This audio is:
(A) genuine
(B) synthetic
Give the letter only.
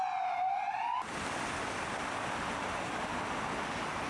A